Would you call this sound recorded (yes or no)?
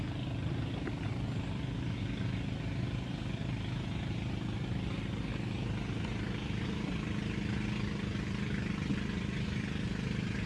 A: yes